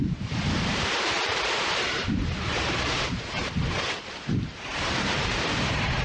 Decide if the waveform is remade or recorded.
remade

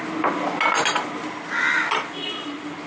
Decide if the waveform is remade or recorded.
recorded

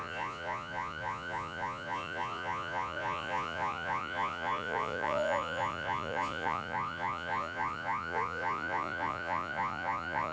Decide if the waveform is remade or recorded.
remade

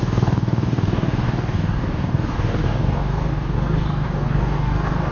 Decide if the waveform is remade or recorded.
remade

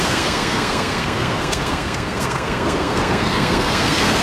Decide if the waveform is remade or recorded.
remade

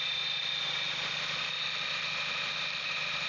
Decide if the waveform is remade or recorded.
recorded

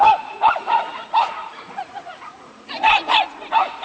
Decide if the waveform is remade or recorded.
remade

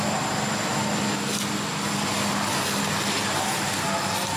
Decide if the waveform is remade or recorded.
recorded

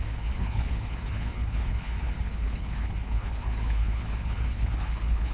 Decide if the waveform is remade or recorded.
remade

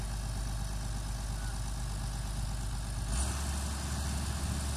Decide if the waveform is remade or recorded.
recorded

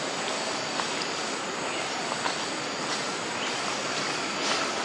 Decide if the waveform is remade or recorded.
recorded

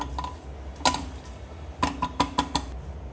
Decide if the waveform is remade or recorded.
recorded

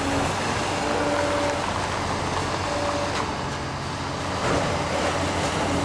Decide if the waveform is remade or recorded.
recorded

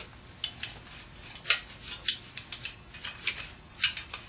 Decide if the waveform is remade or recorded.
recorded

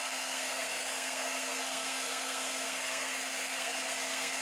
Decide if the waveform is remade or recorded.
remade